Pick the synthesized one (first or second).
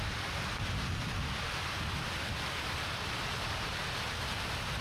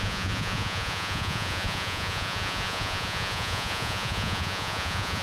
second